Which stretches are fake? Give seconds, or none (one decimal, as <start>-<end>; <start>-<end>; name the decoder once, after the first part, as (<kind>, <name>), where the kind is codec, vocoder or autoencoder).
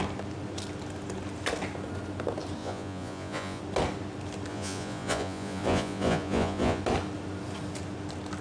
2.6-3.6 (vocoder, Vocos); 4.5-6.8